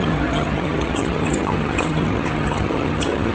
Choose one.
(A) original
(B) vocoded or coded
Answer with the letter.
B